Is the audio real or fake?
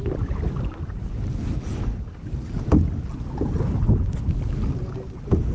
real